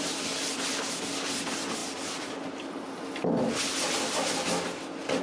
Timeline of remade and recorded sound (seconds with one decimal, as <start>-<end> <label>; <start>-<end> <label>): 0.0-5.2 recorded